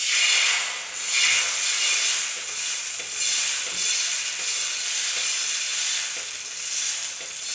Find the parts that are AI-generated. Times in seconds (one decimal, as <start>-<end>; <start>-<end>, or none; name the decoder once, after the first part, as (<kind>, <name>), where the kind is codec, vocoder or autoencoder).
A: none